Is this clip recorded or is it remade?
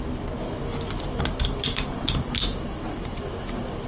recorded